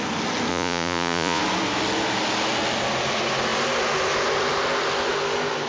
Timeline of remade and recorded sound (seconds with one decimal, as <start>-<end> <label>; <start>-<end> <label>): 0.0-0.5 recorded; 0.5-1.4 remade; 1.4-5.7 recorded